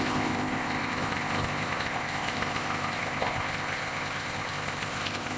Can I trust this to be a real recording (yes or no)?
no